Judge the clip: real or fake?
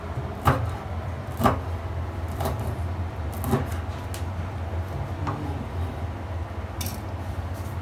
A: real